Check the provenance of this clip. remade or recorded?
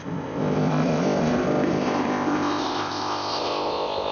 remade